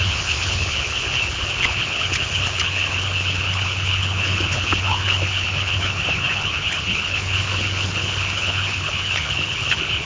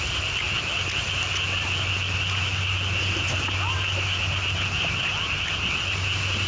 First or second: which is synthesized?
first